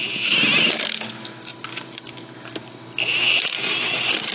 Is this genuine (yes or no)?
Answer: yes